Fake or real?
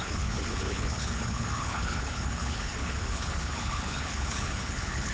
fake